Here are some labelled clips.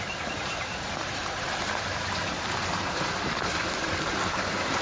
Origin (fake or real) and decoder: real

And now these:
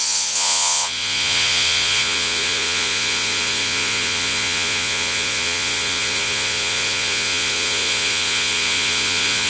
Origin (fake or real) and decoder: fake, vocoder, Vocos